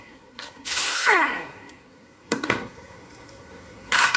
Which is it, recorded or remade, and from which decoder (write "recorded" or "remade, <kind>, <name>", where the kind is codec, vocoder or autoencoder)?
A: remade, codec, SNAC